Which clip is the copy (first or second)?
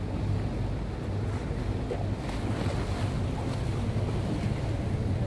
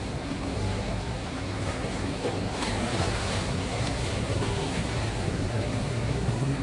second